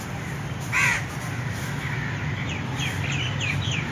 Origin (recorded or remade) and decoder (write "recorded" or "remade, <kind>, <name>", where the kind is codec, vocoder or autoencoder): recorded